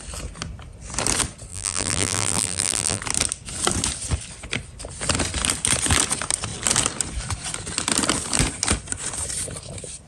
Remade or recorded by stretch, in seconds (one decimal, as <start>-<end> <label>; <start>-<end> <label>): 0.0-1.5 recorded; 1.5-3.0 remade; 3.0-10.1 recorded